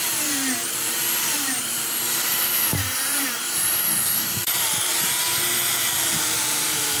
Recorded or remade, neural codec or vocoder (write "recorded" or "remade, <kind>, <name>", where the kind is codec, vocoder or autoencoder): remade, vocoder, BigVGAN v2